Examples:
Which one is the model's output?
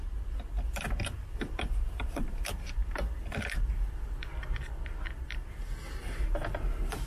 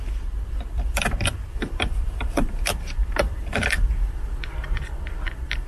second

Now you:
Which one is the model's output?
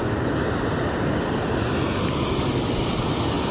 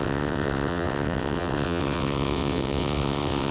second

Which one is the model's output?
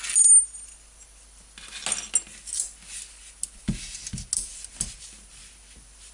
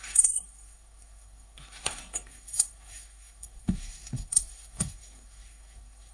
second